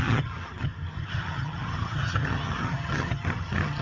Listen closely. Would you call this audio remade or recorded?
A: remade